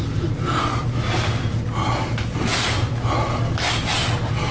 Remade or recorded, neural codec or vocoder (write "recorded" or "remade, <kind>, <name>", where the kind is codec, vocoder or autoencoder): recorded